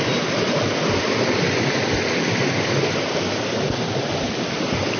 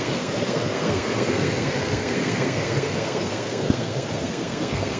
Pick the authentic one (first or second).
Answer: first